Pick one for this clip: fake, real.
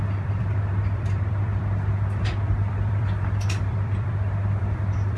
fake